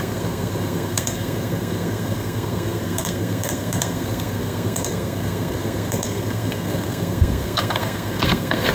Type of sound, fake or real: fake